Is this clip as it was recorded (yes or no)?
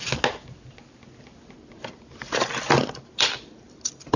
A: yes